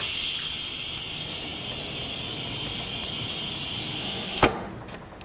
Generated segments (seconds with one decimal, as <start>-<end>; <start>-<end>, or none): 4.0-4.7